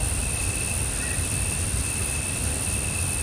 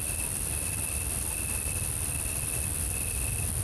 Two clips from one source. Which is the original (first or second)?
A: first